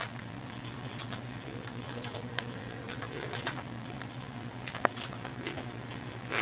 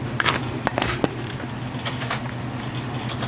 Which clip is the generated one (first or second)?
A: first